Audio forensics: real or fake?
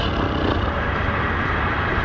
real